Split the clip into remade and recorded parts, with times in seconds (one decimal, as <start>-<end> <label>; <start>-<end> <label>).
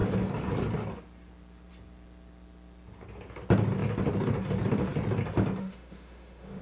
0.0-5.6 recorded; 5.6-6.6 remade